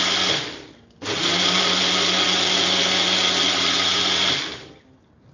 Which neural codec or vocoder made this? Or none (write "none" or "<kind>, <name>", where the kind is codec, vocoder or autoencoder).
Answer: none